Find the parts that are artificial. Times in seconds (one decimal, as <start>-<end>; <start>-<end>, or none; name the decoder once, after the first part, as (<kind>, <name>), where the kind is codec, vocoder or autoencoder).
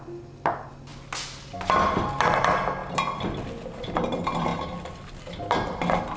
none